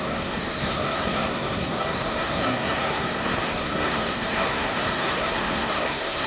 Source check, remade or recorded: remade